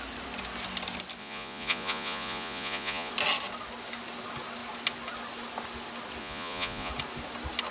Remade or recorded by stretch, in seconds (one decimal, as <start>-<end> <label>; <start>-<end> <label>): 0.0-1.2 recorded; 1.2-3.1 remade; 3.1-6.2 recorded; 6.2-6.9 remade; 6.9-7.7 recorded